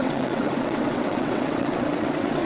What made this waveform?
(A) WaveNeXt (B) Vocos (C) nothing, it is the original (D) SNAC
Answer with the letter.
A